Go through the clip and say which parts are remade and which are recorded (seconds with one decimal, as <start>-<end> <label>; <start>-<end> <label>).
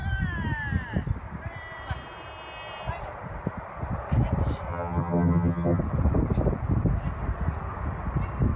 0.0-4.7 recorded; 4.7-5.8 remade; 5.8-8.6 recorded